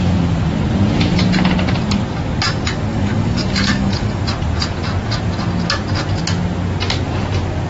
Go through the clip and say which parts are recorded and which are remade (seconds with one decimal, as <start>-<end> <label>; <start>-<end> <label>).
0.0-2.9 recorded; 2.9-4.2 remade; 4.2-7.7 recorded